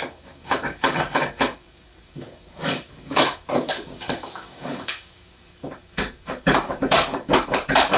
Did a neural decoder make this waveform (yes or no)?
yes